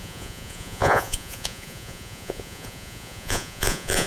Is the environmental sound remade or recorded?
remade